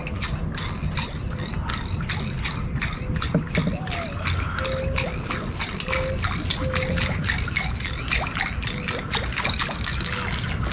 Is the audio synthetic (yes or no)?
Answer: no